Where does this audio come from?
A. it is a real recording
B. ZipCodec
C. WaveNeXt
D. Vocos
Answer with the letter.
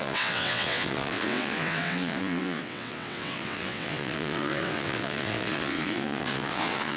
C